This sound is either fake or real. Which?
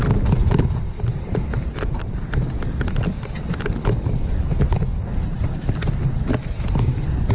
real